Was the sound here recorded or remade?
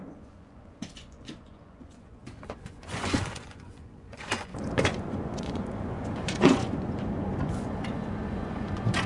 remade